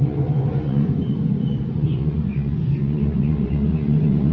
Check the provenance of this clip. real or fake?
fake